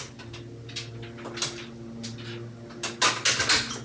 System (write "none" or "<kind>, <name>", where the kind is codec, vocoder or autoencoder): none